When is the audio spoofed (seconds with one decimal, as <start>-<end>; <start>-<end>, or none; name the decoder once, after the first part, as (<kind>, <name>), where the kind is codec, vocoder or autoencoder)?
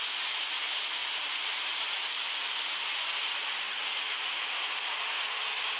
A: none